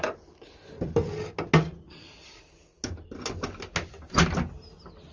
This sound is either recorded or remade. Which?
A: recorded